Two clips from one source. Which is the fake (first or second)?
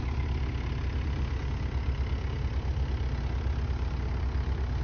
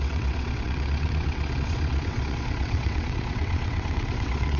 second